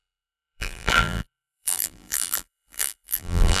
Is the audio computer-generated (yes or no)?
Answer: yes